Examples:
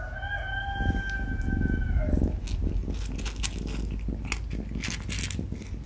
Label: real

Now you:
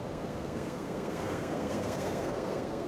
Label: fake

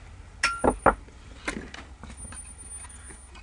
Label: real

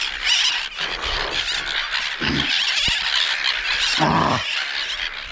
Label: fake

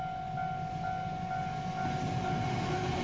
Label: real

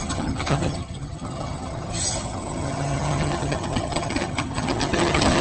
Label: fake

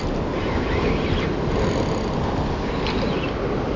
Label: real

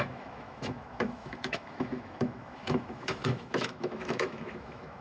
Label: fake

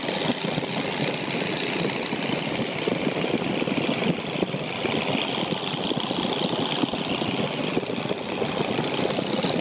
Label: real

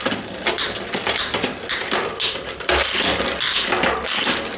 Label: real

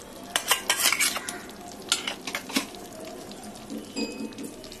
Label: real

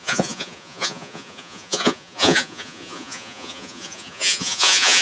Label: fake